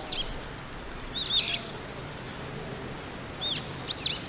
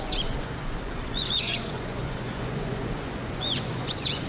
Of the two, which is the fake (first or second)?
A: second